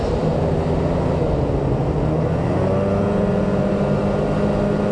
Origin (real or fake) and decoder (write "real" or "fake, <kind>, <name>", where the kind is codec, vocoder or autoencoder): real